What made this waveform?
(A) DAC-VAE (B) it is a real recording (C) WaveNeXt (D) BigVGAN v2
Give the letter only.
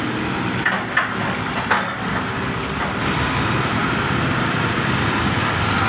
B